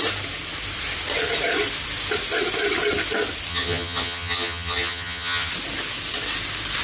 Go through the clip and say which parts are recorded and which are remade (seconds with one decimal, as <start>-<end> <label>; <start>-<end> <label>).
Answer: 0.0-3.5 recorded; 3.5-5.5 remade; 5.5-6.8 recorded